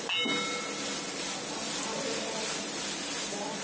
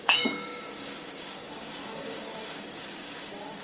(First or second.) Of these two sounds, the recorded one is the first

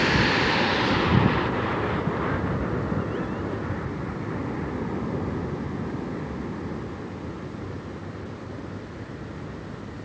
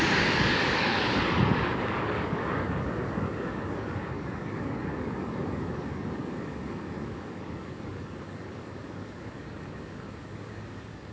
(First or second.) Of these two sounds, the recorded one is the first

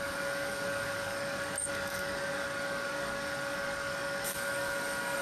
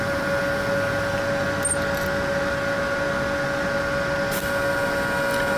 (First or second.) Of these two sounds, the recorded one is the second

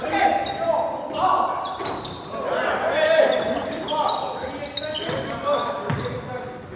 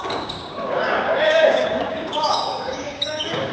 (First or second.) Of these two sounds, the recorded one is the first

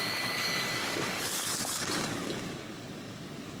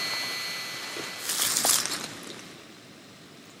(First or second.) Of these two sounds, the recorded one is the second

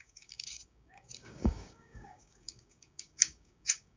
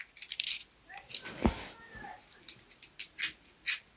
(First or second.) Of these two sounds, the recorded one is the second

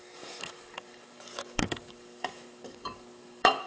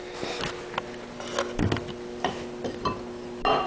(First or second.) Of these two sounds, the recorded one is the second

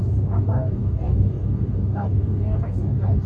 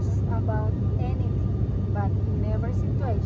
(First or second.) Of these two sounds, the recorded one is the second